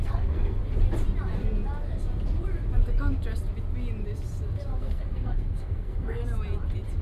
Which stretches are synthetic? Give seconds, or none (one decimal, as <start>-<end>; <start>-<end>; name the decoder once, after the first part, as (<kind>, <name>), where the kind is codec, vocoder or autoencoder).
0.0-0.6 (codec, SNAC); 4.8-6.2